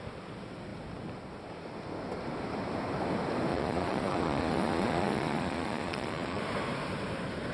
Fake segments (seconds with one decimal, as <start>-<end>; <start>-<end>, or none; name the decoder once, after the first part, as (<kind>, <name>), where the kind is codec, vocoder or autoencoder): 3.5-6.4 (vocoder, Vocos)